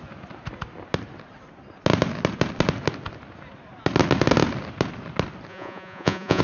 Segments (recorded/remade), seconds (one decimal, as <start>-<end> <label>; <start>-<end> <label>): 0.0-5.5 recorded; 5.5-6.4 remade